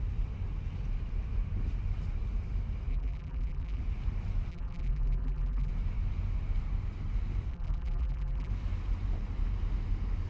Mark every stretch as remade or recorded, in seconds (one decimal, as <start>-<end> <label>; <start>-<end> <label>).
0.0-2.9 recorded; 2.9-3.8 remade; 3.8-4.5 recorded; 4.5-5.7 remade; 5.7-7.5 recorded; 7.5-8.5 remade; 8.5-10.3 recorded